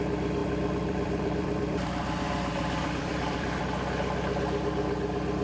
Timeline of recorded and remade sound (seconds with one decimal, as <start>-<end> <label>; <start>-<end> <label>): 0.0-0.4 recorded; 0.4-3.6 remade; 3.6-5.4 recorded